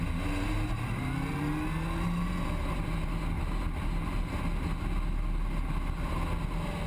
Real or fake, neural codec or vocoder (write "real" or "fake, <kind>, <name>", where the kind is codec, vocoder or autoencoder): real